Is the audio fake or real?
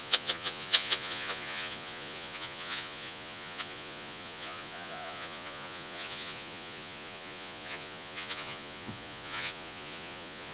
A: fake